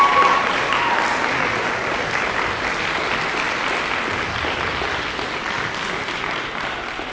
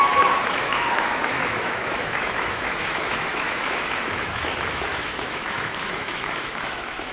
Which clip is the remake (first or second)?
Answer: second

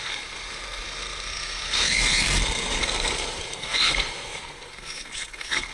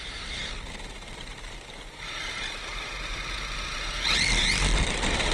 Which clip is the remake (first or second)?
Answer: first